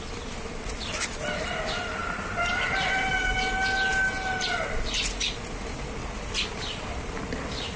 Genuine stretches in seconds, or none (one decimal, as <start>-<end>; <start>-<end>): 0.0-7.8